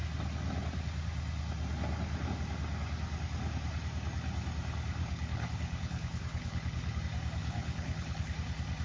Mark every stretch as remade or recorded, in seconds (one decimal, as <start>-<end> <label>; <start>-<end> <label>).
0.0-5.0 recorded; 5.0-7.0 remade; 7.0-7.4 recorded; 7.4-8.3 remade; 8.3-8.8 recorded